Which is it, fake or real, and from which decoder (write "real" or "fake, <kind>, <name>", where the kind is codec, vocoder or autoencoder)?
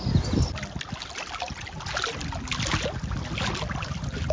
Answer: real